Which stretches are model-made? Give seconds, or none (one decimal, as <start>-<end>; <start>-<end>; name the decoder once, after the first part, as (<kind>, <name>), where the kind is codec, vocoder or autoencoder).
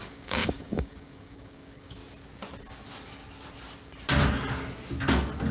0.0-2.0 (codec, DAC)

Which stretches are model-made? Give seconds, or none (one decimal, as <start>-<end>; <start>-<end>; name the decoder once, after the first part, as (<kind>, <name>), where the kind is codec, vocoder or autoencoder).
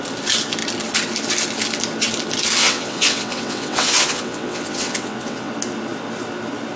2.6-5.5 (vocoder, WaveNeXt)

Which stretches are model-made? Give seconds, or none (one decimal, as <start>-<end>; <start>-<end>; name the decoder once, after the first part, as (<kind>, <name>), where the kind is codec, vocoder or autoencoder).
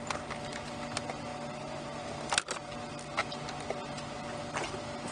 none